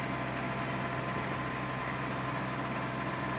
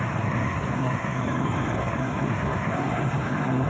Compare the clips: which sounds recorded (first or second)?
first